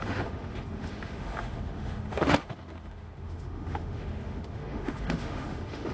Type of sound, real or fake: fake